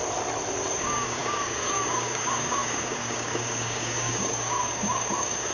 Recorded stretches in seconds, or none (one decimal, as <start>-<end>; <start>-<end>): 0.0-0.7

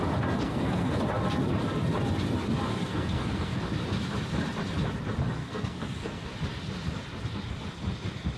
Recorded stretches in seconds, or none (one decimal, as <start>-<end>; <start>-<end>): 0.0-0.4; 1.0-2.7; 3.6-5.4; 6.3-8.4

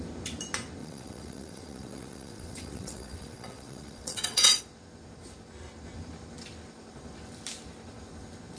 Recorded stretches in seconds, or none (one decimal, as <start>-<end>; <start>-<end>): 0.0-0.8; 4.6-8.6

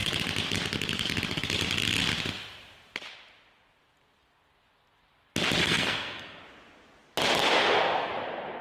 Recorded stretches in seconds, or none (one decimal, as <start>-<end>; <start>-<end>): 0.0-5.6; 6.4-7.6; 8.1-8.6

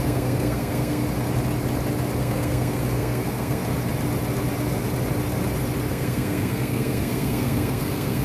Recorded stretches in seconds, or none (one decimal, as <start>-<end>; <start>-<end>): 1.0-2.2; 3.6-5.9

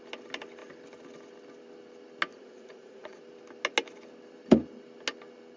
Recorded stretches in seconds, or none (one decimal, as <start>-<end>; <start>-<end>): 0.0-2.3; 3.2-5.6

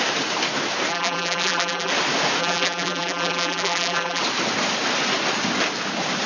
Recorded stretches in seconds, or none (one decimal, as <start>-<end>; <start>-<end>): 0.0-0.9; 1.9-2.4; 4.2-6.3

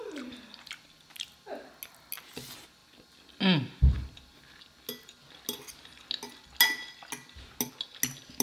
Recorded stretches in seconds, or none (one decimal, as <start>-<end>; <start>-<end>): 0.0-8.4